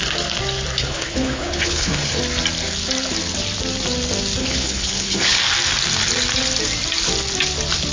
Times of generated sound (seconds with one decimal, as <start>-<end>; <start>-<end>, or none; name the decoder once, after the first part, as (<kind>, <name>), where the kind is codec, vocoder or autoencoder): 0.8-2.2 (codec, HILCodec); 4.4-5.4